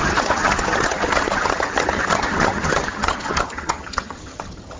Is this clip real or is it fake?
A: fake